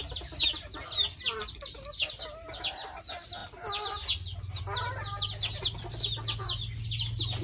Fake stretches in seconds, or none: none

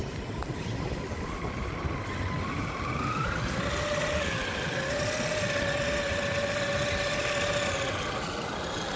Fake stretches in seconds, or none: none

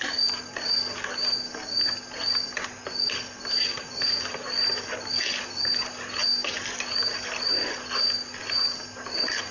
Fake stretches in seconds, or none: none

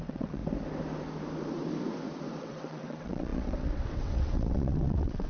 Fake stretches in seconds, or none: 0.0-0.4; 2.4-5.3

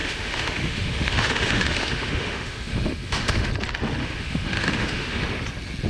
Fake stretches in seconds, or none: 0.0-3.5; 4.0-5.2

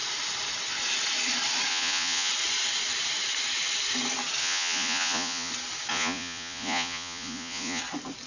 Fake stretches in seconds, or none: 1.7-2.3; 4.4-5.5; 5.9-7.8

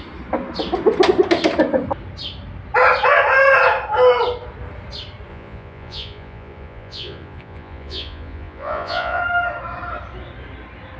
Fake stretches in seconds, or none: 5.3-9.2

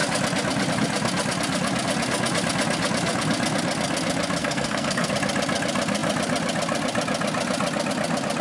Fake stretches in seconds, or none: 4.4-5.1